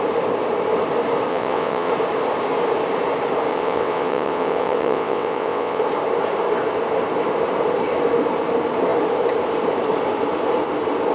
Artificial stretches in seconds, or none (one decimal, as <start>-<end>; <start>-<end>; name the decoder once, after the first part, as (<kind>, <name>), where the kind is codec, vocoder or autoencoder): 1.3-1.9 (vocoder, WaveNeXt); 3.5-5.8